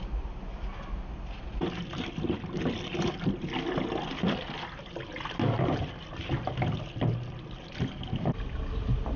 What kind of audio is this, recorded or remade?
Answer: recorded